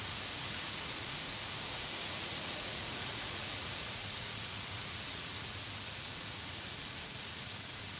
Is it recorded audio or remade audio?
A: remade